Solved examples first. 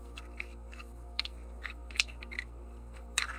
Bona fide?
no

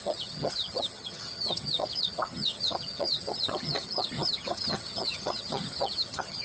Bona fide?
no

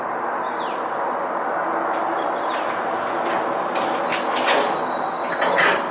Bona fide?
yes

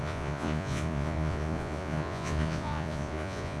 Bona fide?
no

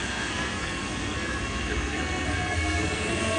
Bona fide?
no